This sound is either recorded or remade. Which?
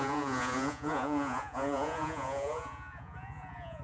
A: remade